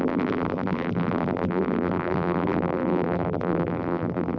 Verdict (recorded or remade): remade